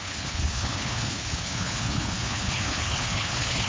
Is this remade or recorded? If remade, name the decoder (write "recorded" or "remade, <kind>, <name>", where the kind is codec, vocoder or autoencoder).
remade, codec, HILCodec